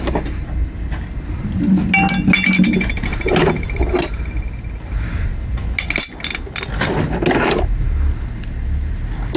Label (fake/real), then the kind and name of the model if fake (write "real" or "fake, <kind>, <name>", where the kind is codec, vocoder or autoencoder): real